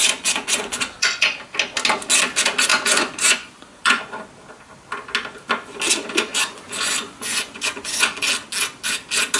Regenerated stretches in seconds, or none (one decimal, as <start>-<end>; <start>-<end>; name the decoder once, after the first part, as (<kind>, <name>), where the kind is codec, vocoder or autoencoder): 0.0-1.3 (vocoder, Vocos); 2.7-4.0; 6.3-8.3